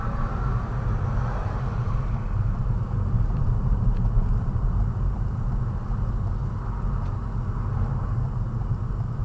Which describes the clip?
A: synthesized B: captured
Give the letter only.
B